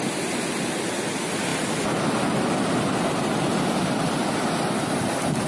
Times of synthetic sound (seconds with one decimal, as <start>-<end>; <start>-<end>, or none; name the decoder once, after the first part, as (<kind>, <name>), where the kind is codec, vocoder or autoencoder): none